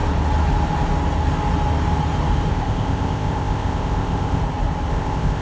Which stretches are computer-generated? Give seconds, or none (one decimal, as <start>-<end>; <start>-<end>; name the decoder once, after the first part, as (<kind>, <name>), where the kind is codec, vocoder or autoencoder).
2.5-4.4 (codec, ZipCodec); 4.9-5.4